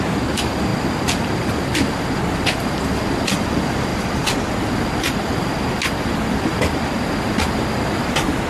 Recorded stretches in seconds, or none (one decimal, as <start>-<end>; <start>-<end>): 0.0-8.5